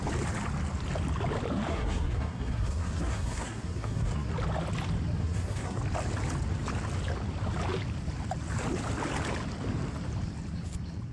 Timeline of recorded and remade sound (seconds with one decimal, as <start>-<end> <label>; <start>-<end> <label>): 0.0-1.7 recorded; 1.7-4.3 remade; 4.3-5.2 recorded; 5.2-5.8 remade; 5.8-11.1 recorded